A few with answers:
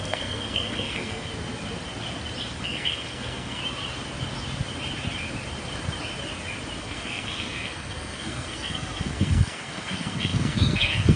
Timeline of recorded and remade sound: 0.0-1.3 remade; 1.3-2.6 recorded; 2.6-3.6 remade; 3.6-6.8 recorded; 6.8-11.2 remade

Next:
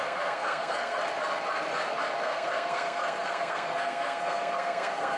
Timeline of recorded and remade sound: 0.0-1.0 remade; 1.0-2.2 recorded; 2.2-5.2 remade

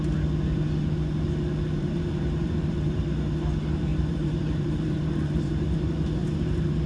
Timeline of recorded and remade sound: 0.0-1.8 recorded; 1.8-3.0 remade; 3.0-3.9 recorded; 3.9-6.9 remade

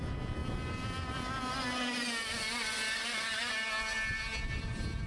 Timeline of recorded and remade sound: 0.0-5.1 recorded

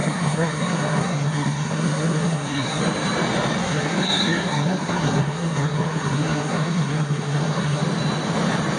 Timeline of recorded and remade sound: 0.0-2.8 remade; 2.8-3.6 recorded; 3.6-7.8 remade; 7.8-8.8 recorded